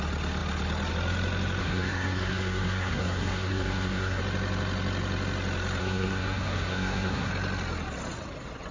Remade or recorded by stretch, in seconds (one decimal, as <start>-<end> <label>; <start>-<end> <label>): 0.0-1.6 recorded; 1.6-4.2 remade; 4.2-5.8 recorded; 5.8-7.3 remade; 7.3-8.7 recorded